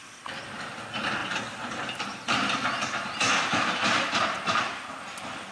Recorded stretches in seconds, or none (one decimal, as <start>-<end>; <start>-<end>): 0.0-1.2; 4.2-5.5